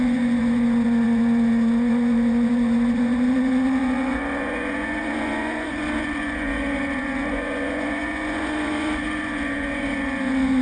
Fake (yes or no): yes